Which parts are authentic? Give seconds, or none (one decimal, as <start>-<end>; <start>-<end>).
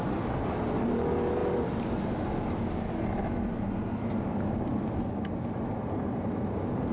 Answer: 0.0-6.9